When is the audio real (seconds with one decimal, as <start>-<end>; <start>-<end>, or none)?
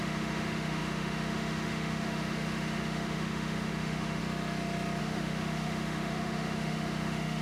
4.2-5.0